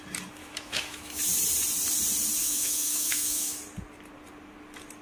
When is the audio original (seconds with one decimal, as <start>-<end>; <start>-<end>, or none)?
0.0-0.4; 1.2-2.4; 3.6-5.0